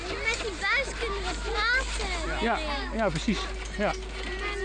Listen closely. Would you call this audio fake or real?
real